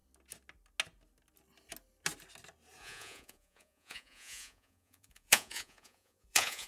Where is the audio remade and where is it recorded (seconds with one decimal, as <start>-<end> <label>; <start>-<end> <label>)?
0.0-2.8 recorded; 2.8-6.7 remade